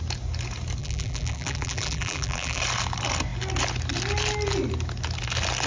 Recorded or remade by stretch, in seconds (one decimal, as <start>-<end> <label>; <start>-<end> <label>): 0.0-0.8 recorded; 0.8-2.6 remade; 2.6-5.7 recorded